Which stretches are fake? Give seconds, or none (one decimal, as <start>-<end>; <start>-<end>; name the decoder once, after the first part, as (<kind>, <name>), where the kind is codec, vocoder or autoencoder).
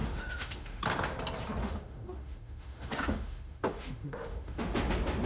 0.0-0.8 (autoencoder, DAC-VAE); 1.6-4.8